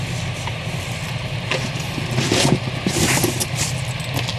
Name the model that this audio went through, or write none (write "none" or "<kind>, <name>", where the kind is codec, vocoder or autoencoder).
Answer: none